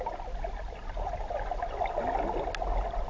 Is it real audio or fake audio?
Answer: real